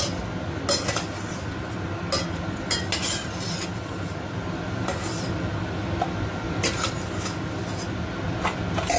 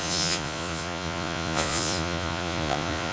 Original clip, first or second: first